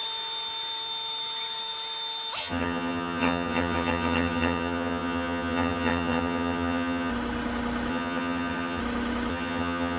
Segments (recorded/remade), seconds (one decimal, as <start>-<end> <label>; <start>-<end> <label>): 0.0-2.4 recorded; 2.4-7.1 remade; 7.1-7.9 recorded; 7.9-8.8 remade; 8.8-9.3 recorded; 9.3-10.0 remade